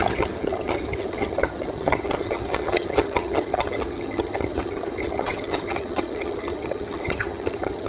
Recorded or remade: remade